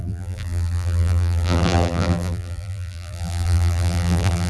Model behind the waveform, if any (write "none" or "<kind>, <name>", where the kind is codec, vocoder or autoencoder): vocoder, BigVGAN v2